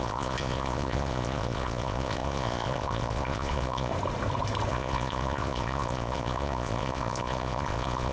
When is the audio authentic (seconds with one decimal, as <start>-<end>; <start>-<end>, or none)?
3.9-4.7